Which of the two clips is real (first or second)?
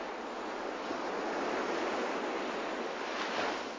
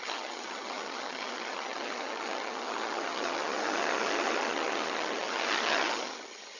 first